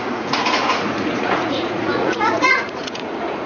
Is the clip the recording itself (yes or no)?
no